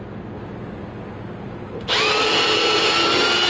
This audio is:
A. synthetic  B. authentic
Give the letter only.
B